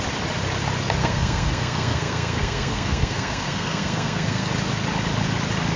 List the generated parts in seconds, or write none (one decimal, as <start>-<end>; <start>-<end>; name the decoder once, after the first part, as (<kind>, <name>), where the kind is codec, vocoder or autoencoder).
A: 1.0-4.5 (codec, SNAC)